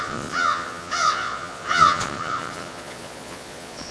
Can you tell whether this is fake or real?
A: fake